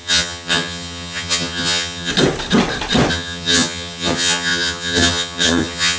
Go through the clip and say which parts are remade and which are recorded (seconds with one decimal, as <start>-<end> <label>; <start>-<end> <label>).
0.0-2.1 remade; 2.1-3.1 recorded; 3.1-6.0 remade